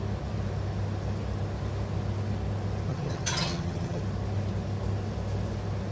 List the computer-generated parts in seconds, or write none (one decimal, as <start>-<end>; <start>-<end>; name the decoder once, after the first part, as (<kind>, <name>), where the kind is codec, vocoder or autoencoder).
2.9-4.0 (vocoder, HiFi-GAN)

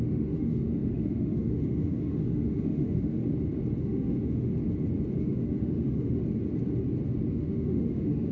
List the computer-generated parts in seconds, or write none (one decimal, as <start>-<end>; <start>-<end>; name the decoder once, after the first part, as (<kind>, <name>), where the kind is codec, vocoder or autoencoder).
0.0-3.2 (autoencoder, DAC-VAE); 3.8-4.5; 5.2-6.2; 7.3-8.3

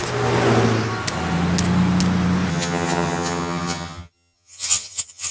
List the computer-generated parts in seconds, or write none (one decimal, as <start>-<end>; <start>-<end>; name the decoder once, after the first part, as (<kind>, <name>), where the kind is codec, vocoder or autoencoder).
2.5-5.3 (vocoder, HiFi-GAN)

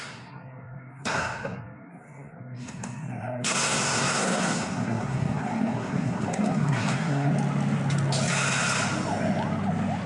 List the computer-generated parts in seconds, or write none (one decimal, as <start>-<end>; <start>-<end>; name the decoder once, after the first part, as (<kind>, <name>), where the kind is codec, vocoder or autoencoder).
0.0-7.3 (codec, SNAC)